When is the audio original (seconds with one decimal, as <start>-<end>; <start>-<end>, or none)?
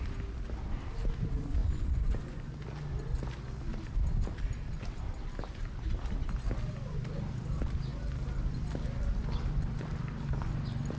0.0-1.6; 2.5-11.0